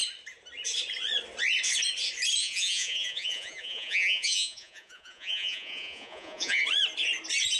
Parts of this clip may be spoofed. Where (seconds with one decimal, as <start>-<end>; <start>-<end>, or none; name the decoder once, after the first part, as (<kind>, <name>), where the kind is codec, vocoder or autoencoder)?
2.4-6.6 (vocoder, Vocos)

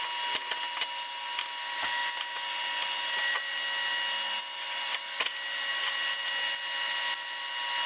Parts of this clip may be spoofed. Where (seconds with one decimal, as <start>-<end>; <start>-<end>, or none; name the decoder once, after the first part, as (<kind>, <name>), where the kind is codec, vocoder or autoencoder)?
none

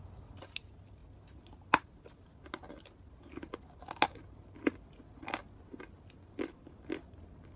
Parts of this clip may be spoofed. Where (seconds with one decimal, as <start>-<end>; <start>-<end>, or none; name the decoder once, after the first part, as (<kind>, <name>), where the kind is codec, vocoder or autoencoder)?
none

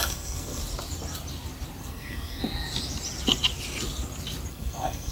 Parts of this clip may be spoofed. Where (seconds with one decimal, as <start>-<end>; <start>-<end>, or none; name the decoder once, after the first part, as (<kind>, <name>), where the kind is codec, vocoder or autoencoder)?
0.0-0.6 (codec, SNAC); 1.8-2.4; 4.5-5.1